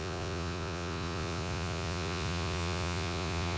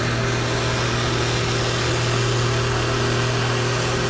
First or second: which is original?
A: second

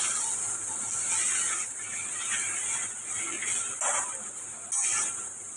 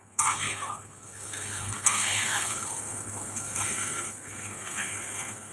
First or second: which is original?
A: first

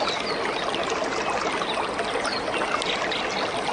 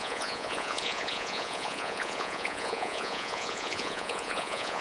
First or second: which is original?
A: first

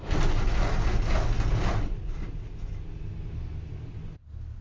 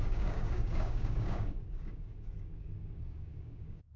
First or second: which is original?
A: first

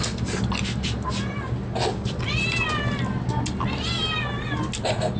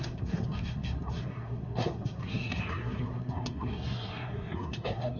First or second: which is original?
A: first